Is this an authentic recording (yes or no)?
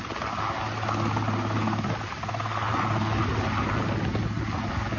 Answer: yes